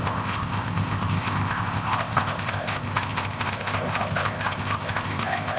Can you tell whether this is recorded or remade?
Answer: remade